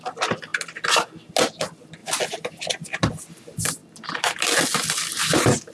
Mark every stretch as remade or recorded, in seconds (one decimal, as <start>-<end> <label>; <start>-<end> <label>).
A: 0.0-5.7 recorded